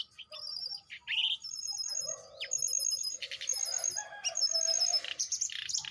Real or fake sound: real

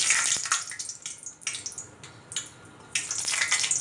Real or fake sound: real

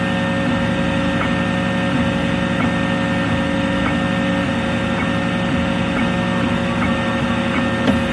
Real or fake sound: real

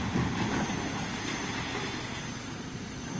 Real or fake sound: real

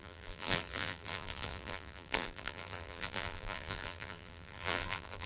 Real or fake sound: fake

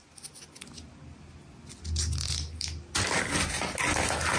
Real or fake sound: real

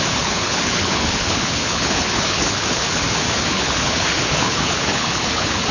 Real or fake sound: fake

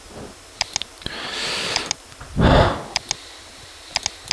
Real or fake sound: real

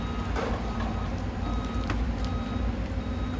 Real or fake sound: real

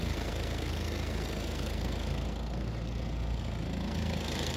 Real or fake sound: fake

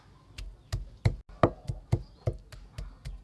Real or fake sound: real